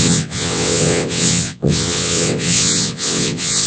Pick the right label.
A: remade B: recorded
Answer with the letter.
A